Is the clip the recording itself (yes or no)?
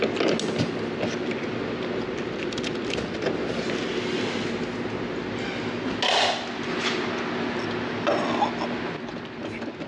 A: yes